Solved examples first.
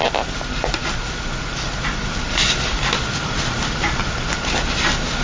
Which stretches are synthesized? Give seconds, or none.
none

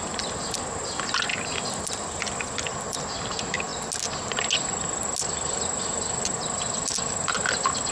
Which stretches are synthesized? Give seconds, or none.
1.3-3.0 (vocoder, BigVGAN v2)

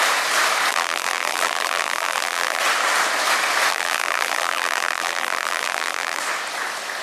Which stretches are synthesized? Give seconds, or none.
0.7-2.6 (vocoder, BigVGAN v2); 3.7-6.2

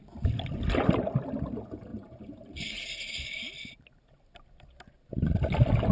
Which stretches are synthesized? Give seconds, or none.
1.9-3.1 (vocoder, BigVGAN v2)

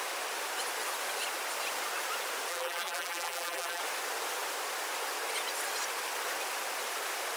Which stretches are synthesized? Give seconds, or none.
2.5-3.8 (vocoder, BigVGAN v2)

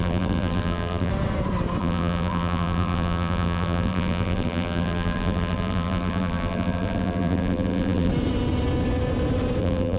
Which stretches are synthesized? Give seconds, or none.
0.0-1.1 (vocoder, BigVGAN v2); 1.8-8.1; 9.6-10.0

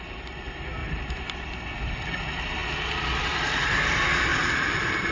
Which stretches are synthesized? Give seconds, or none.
0.8-1.4 (vocoder, BigVGAN v2); 4.3-5.1